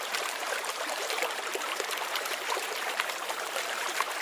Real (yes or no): no